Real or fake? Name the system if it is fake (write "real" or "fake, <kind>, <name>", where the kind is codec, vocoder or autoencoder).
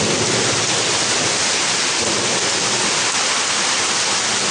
real